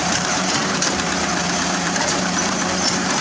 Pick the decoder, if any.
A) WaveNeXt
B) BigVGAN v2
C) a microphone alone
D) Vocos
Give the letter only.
B